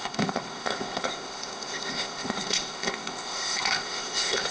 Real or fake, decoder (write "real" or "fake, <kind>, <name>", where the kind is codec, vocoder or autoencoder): fake, codec, ZipCodec